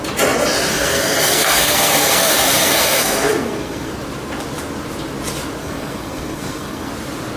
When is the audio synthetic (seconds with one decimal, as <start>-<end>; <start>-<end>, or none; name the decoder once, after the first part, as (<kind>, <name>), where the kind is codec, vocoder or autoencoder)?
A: 0.7-3.9 (codec, SNAC); 5.6-6.9